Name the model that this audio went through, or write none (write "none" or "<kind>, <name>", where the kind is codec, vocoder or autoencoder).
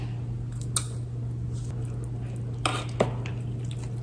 none